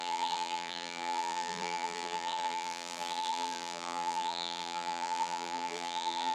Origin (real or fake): fake